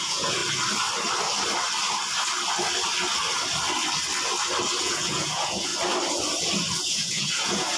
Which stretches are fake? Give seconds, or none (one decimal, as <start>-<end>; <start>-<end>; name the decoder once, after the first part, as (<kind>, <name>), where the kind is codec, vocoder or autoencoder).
0.0-0.4 (vocoder, Vocos); 4.8-5.7; 6.8-7.8